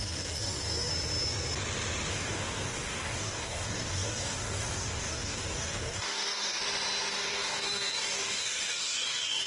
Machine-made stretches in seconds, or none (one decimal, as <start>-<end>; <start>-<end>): 0.0-0.9; 2.1-6.6; 7.1-9.5